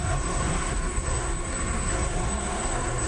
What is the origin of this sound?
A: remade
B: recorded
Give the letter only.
A